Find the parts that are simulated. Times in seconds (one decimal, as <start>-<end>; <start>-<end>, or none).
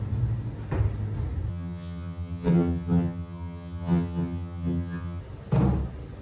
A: 1.5-5.2